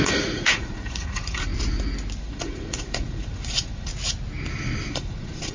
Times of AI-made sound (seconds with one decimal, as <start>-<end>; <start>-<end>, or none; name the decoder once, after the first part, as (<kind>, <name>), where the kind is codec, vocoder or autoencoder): 0.0-1.5 (vocoder, Vocos); 2.2-3.9; 4.9-5.5